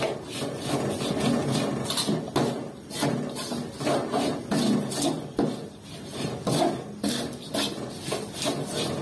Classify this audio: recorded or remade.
recorded